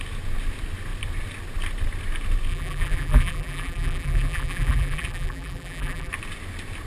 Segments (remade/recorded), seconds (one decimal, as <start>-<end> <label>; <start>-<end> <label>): 0.0-2.5 recorded; 2.5-6.1 remade; 6.1-6.9 recorded